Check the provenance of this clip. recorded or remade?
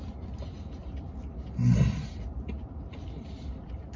recorded